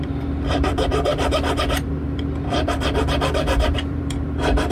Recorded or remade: remade